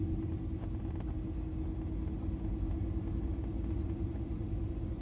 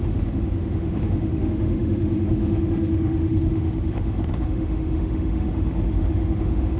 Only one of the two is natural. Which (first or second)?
first